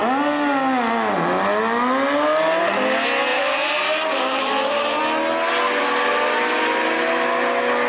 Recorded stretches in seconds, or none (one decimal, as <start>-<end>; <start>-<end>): 0.0-3.3; 5.0-7.9